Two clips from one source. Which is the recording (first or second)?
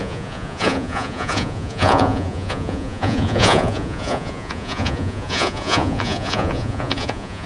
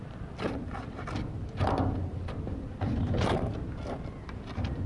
second